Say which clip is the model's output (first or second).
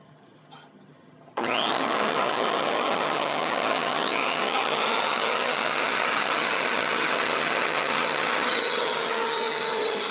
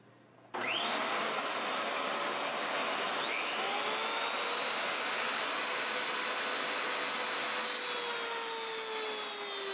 first